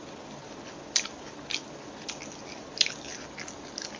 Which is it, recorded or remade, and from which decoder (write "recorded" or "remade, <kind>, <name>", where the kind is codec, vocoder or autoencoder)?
recorded